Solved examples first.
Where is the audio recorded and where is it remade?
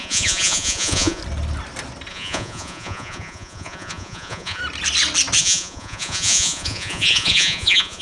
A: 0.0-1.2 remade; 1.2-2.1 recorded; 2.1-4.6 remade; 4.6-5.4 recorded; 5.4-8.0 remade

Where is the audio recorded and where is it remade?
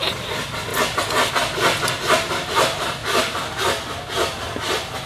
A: 0.0-5.1 recorded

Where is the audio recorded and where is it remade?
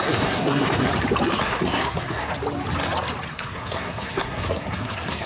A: 0.0-0.9 remade; 0.9-1.4 recorded; 1.4-2.3 remade; 2.3-3.3 recorded; 3.3-5.3 remade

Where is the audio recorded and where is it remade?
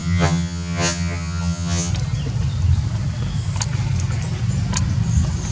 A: 0.0-1.9 remade; 1.9-5.5 recorded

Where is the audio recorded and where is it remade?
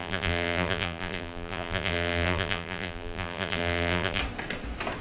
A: 0.0-4.2 remade; 4.2-5.0 recorded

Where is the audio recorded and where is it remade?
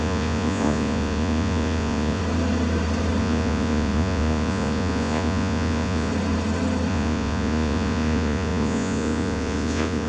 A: 0.0-2.2 remade; 2.2-3.2 recorded; 3.2-6.1 remade; 6.1-6.9 recorded; 6.9-10.1 remade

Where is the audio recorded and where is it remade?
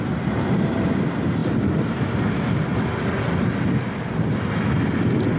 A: 0.0-5.4 recorded